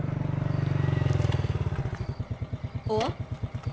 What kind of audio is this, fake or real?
real